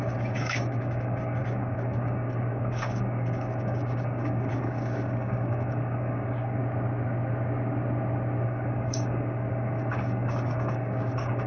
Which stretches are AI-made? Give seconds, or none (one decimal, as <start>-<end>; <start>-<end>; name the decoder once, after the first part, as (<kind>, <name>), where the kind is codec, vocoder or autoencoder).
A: 0.0-6.6 (codec, DAC); 8.4-11.5